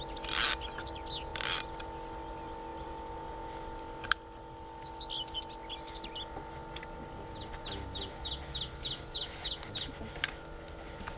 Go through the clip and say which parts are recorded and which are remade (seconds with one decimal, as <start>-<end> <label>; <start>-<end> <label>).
0.0-1.3 recorded; 1.3-1.8 remade; 1.8-2.7 recorded; 2.7-4.9 remade; 4.9-11.2 recorded